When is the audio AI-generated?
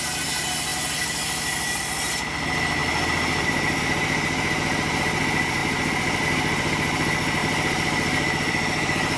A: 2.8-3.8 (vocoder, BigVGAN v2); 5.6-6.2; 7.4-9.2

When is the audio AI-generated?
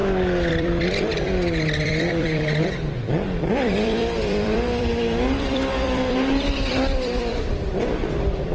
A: 0.5-8.5 (vocoder, BigVGAN v2)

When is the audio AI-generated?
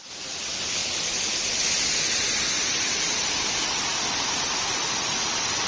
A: 0.8-3.3 (vocoder, BigVGAN v2)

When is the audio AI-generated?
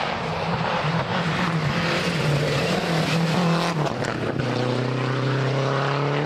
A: 0.0-1.1 (vocoder, BigVGAN v2); 3.7-6.3